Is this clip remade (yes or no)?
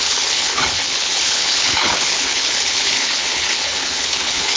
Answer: yes